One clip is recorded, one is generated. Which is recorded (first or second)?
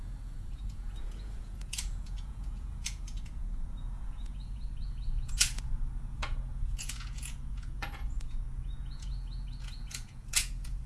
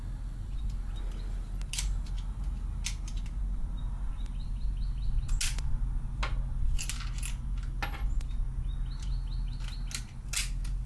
second